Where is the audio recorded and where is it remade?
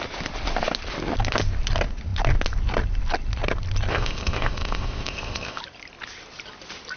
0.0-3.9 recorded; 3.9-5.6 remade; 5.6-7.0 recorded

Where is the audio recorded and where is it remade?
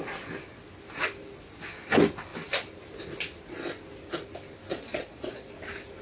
0.0-4.7 recorded; 4.7-5.5 remade; 5.5-6.0 recorded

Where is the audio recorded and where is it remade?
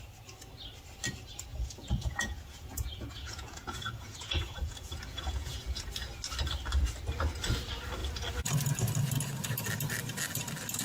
0.0-1.5 recorded; 1.5-5.9 remade; 5.9-10.8 recorded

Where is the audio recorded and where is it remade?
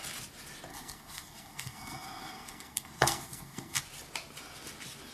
0.0-0.7 recorded; 0.7-3.8 remade; 3.8-5.1 recorded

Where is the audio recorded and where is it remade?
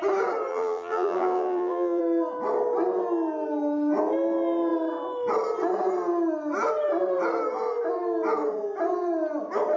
0.0-0.5 recorded; 0.5-2.0 remade; 2.0-9.8 recorded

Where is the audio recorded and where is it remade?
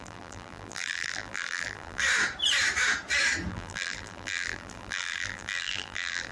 0.0-2.0 remade; 2.0-3.5 recorded; 3.5-6.3 remade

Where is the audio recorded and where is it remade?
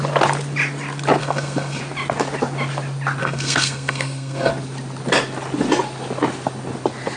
0.0-1.2 recorded; 1.2-1.8 remade; 1.8-3.2 recorded; 3.2-4.5 remade; 4.5-7.2 recorded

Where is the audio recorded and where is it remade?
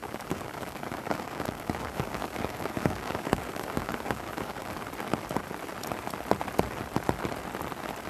0.0-4.8 remade; 4.8-8.1 recorded